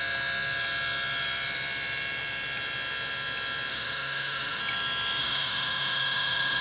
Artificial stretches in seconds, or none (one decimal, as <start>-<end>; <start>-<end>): 3.7-4.6; 5.2-6.6